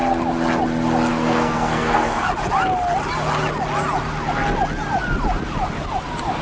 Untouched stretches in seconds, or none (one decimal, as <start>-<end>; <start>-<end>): 0.0-1.1; 2.3-6.4